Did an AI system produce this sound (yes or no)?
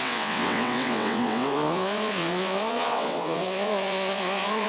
yes